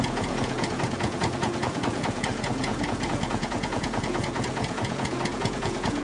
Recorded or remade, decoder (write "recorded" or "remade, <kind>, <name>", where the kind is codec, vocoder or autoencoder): remade, vocoder, Vocos